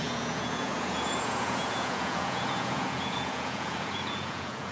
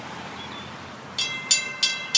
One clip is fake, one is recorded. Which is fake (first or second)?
first